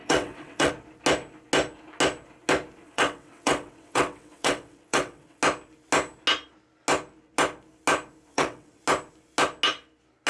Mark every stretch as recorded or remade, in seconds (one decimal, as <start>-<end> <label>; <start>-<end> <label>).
0.0-0.7 remade; 0.7-2.8 recorded; 2.8-5.4 remade; 5.4-8.3 recorded; 8.3-8.8 remade; 8.8-10.3 recorded